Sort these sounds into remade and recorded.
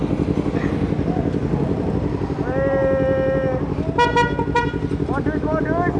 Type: recorded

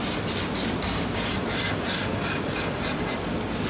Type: recorded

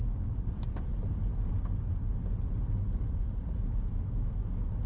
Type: recorded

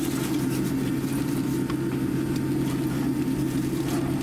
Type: recorded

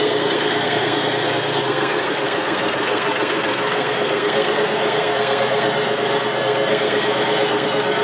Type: remade